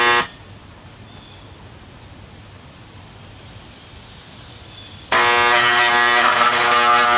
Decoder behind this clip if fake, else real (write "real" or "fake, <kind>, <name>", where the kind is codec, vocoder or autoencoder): real